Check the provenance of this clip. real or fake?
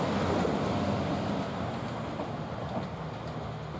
real